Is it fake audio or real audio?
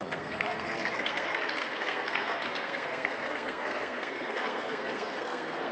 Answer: fake